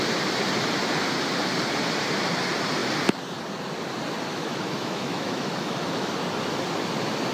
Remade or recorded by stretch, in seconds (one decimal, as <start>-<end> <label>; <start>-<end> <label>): 0.0-4.3 recorded; 4.3-6.1 remade; 6.1-7.3 recorded